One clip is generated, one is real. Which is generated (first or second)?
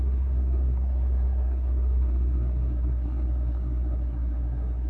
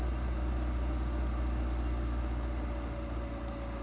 first